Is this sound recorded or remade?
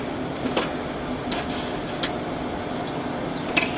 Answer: recorded